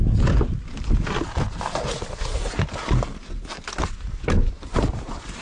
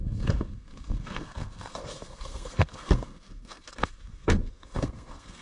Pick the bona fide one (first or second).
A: first